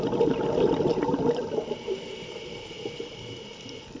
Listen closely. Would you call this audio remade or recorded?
recorded